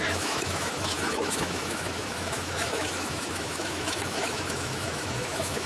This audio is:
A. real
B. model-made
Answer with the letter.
B